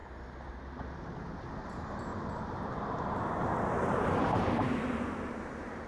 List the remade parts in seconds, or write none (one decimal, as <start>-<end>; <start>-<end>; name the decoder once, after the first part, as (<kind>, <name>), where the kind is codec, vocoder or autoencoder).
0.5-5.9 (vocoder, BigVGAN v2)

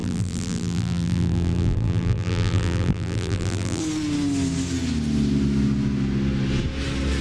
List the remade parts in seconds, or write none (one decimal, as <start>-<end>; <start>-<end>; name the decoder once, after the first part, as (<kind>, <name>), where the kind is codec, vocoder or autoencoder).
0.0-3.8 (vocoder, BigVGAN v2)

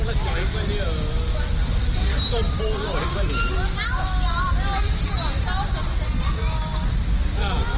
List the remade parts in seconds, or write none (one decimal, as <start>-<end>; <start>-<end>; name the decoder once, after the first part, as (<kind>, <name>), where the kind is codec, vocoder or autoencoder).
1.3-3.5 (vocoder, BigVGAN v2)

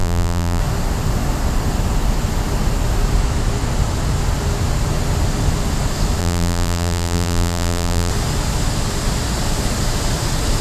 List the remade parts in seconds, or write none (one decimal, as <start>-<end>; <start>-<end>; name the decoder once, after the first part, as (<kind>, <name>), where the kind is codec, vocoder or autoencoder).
0.0-0.6 (vocoder, BigVGAN v2); 6.2-8.1